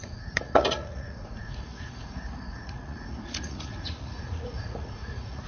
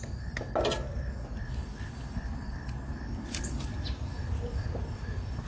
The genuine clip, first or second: second